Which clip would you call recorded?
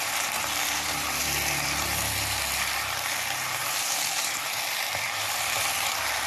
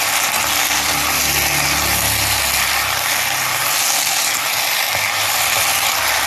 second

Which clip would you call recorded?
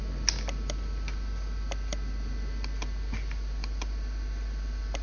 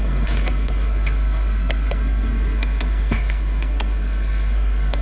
first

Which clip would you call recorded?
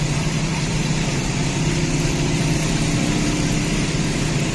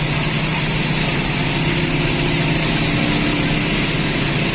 second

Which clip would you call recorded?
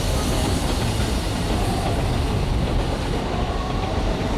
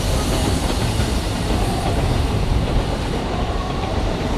first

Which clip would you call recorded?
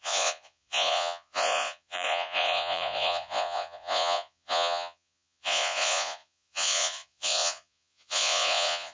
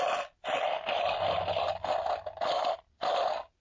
second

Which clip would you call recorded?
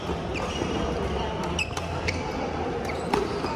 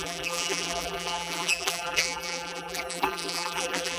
first